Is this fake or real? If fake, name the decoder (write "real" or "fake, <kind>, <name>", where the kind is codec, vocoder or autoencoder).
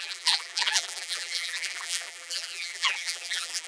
fake, vocoder, BigVGAN v2